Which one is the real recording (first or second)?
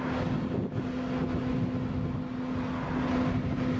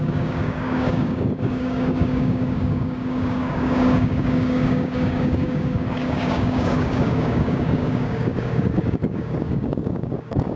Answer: first